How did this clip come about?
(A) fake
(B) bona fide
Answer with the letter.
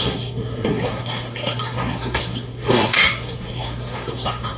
A